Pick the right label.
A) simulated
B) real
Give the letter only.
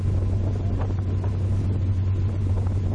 B